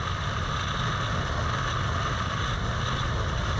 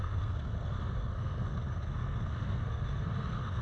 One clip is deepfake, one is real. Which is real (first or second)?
first